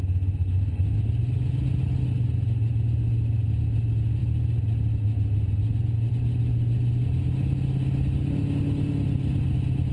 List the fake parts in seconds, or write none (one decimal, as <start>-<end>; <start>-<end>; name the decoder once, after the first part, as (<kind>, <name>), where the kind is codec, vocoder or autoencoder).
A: none

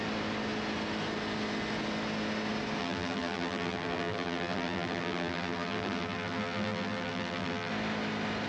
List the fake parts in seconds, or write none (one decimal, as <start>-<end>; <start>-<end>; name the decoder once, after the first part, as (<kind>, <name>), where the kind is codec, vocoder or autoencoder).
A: 2.8-7.7 (vocoder, BigVGAN v2)